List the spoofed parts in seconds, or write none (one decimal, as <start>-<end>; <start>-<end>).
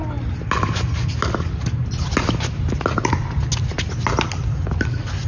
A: none